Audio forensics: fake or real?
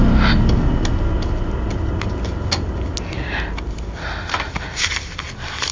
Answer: real